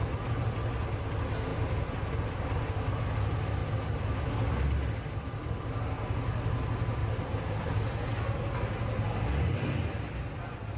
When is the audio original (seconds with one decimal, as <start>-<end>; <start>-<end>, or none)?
0.0-10.8